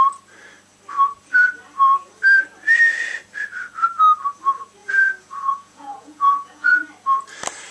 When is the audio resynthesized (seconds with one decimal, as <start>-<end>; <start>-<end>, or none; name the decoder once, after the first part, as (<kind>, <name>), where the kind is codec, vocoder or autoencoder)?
4.8-6.9 (vocoder, Vocos)